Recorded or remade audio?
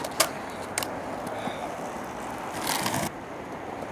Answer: recorded